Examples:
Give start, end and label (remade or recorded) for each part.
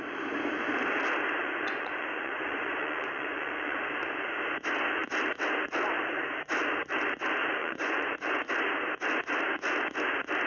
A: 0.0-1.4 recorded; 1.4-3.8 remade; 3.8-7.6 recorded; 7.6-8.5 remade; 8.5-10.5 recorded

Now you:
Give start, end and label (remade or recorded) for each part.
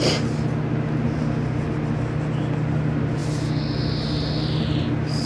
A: 0.0-5.3 recorded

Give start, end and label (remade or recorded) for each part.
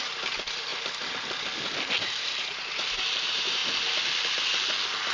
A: 0.0-0.7 remade; 0.7-2.0 recorded; 2.0-3.6 remade; 3.6-5.1 recorded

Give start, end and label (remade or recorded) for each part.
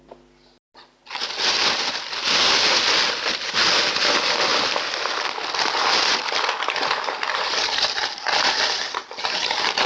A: 0.0-9.9 recorded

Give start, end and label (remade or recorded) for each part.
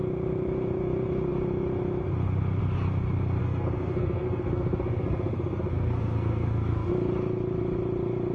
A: 0.0-3.4 recorded; 3.4-6.9 remade; 6.9-8.3 recorded